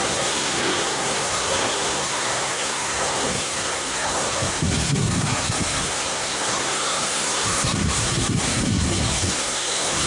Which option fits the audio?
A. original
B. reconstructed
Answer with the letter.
B